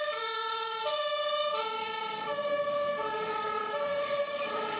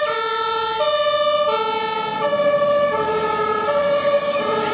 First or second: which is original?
second